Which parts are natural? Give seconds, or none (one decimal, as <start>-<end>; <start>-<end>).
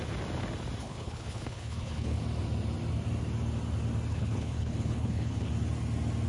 0.0-0.8; 2.2-4.1; 5.5-6.3